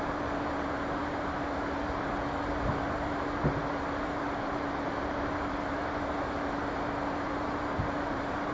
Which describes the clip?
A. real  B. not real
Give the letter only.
B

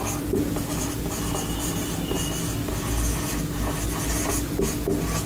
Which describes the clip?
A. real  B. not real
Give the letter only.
A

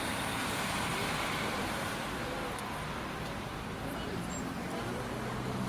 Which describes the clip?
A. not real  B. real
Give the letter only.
B